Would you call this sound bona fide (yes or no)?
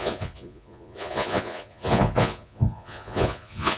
no